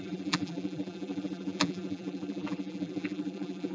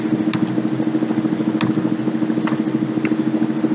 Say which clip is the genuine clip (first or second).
second